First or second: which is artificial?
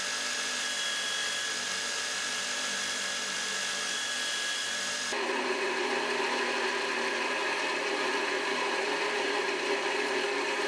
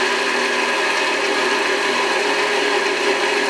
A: first